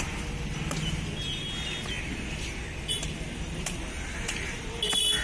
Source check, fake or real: real